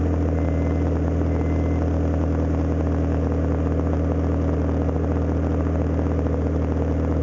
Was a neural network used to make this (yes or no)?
no